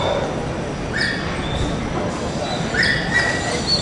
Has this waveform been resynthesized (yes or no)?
no